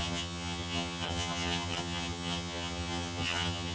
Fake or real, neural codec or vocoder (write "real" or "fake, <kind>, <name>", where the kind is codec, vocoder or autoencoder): fake, vocoder, HiFi-GAN